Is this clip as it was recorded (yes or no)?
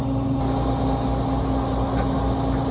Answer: yes